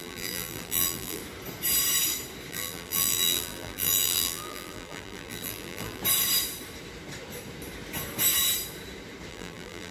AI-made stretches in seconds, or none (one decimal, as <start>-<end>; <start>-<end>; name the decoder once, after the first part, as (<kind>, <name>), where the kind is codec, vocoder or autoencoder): 0.0-1.2 (vocoder, BigVGAN v2); 2.5-6.0; 9.3-9.9